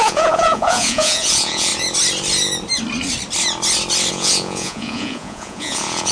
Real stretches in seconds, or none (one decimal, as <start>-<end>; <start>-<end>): 1.7-4.1